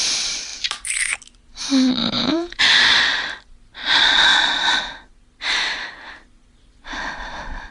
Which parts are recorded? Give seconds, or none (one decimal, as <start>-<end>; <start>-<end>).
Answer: 0.0-2.0; 2.6-7.7